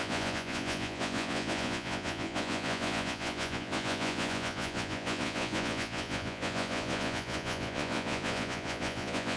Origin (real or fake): fake